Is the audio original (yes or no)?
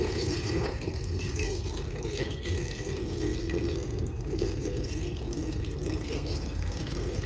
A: no